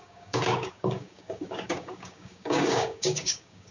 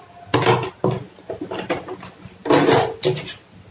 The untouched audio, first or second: second